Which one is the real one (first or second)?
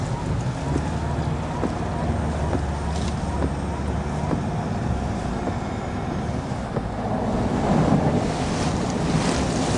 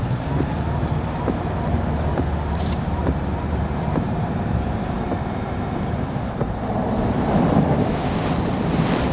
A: first